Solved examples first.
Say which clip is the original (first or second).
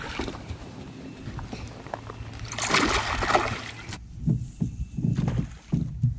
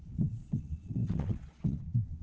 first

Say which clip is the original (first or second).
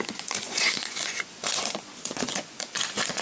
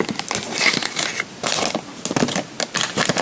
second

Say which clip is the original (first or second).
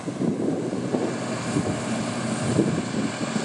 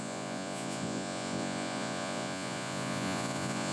first